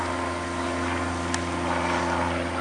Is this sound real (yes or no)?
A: yes